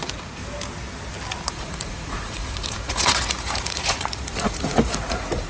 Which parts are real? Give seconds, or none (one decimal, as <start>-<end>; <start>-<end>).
0.4-1.5